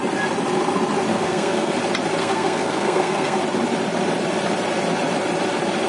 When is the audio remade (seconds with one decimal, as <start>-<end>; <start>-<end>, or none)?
1.1-1.7; 2.2-3.4